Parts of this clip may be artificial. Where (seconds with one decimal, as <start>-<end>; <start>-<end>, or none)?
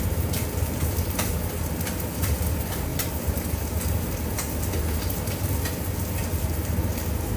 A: none